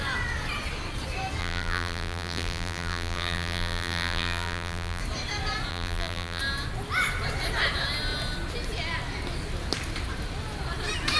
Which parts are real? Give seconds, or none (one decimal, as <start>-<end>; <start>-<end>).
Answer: 0.0-1.4; 5.0-5.7; 6.4-11.2